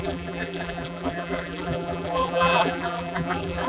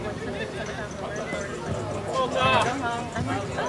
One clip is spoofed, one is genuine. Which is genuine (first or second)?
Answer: second